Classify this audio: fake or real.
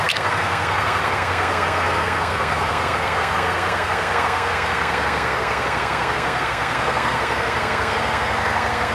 fake